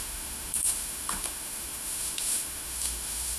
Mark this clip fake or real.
fake